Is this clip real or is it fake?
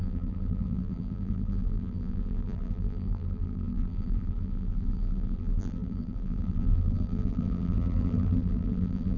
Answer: fake